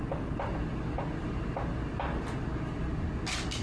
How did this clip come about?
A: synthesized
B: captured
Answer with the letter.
B